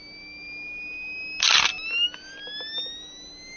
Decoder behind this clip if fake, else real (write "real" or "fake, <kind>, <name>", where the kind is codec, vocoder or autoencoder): real